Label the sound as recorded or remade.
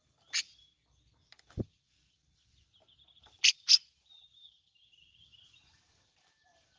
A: remade